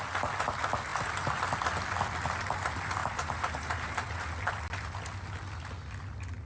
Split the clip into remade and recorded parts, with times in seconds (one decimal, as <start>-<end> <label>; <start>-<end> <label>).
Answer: 0.0-3.0 recorded; 3.0-4.2 remade; 4.2-6.4 recorded